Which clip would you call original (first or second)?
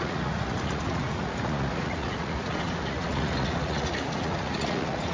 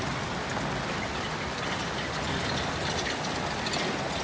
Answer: second